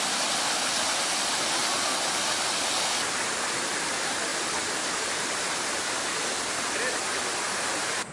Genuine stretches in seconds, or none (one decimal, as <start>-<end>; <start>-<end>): 0.0-8.1